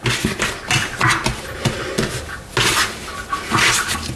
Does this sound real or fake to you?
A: real